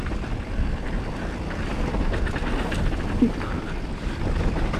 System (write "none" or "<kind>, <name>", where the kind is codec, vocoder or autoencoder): none